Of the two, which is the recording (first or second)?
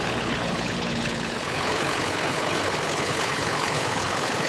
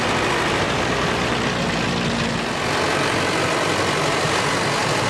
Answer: second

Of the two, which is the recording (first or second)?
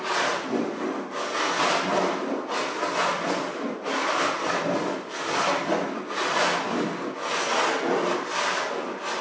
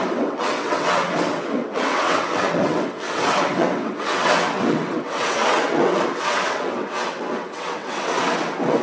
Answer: first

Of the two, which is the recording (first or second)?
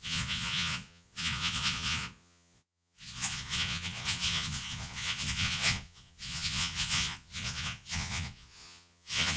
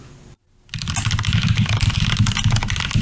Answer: second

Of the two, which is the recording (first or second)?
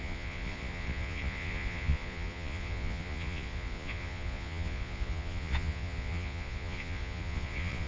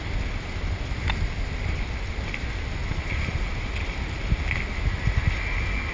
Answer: second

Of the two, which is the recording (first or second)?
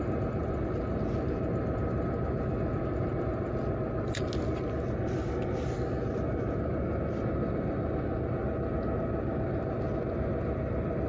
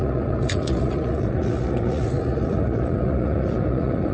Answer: first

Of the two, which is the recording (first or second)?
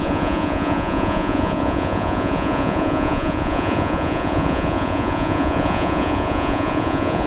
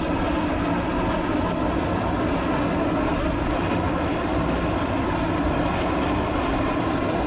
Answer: second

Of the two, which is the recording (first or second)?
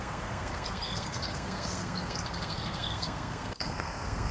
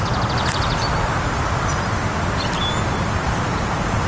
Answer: second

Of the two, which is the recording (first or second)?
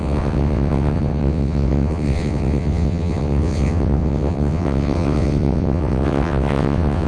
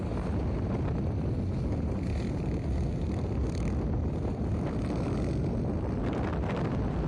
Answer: second